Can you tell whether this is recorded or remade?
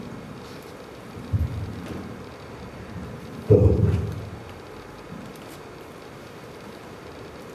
remade